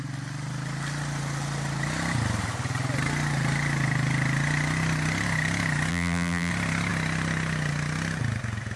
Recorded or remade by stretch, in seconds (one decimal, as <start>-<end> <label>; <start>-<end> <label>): 0.0-5.9 recorded; 5.9-6.5 remade; 6.5-8.8 recorded